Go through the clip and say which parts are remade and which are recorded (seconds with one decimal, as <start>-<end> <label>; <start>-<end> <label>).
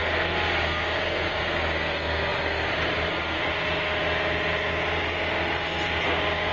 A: 0.0-6.5 recorded